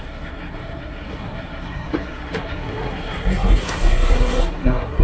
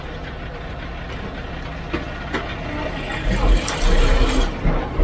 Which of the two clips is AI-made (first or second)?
first